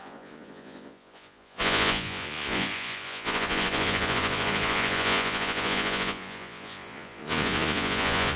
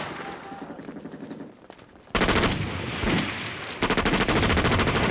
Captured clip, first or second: second